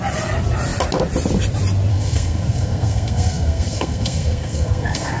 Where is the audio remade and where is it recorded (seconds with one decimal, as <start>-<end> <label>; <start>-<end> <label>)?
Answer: 0.0-1.9 recorded; 1.9-5.2 remade